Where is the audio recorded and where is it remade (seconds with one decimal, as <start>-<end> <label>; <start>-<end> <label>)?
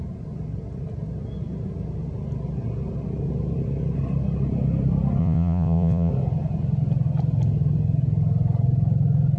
0.0-5.2 recorded; 5.2-6.1 remade; 6.1-9.4 recorded